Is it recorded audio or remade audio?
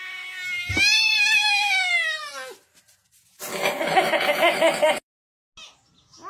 recorded